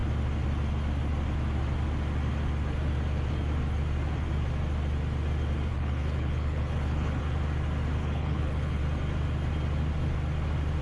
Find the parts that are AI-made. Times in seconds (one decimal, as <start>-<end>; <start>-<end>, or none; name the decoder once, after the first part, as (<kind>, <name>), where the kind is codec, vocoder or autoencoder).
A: 5.7-7.2 (codec, HILCodec); 8.0-8.8

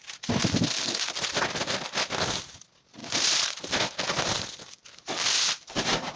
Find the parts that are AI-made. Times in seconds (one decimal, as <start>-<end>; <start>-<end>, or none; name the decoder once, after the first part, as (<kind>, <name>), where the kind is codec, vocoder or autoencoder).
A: 3.0-5.7 (vocoder, BigVGAN v2)

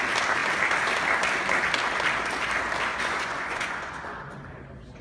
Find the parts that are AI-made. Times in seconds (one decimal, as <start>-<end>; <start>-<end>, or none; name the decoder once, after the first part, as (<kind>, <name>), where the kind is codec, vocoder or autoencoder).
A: 2.9-4.3 (vocoder, Vocos)

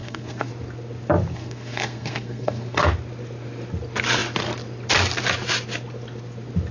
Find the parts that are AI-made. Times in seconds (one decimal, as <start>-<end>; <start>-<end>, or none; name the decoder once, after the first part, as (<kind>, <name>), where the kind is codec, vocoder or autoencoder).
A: 0.0-0.5 (codec, SNAC); 1.3-2.8

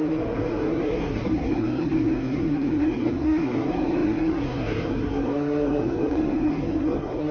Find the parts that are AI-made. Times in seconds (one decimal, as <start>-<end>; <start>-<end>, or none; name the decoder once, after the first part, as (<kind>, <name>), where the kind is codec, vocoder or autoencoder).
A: 0.0-7.3 (codec, SNAC)

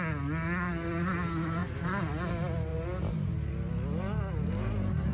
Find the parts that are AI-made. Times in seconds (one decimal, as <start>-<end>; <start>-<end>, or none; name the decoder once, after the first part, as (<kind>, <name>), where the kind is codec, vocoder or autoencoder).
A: none

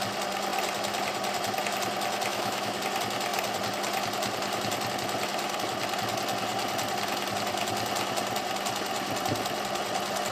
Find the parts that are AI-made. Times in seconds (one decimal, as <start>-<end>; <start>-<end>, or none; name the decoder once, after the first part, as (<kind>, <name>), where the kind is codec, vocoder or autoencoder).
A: 2.3-2.8 (autoencoder, DAC-VAE)